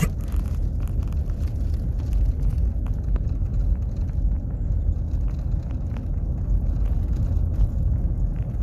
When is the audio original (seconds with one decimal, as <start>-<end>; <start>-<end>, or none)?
0.0-8.6